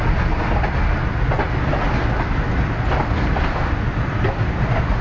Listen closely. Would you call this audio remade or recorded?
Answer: recorded